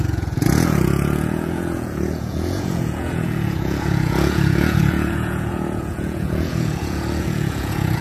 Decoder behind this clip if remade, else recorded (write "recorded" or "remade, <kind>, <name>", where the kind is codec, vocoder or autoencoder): remade, vocoder, Vocos